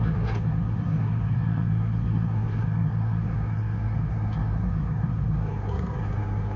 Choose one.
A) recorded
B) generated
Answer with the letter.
B